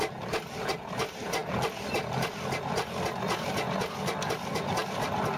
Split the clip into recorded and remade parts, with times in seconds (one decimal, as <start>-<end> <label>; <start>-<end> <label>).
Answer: 0.0-5.4 recorded